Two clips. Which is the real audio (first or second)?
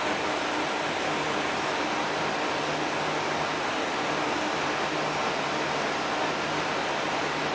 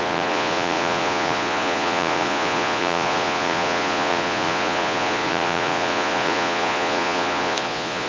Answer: first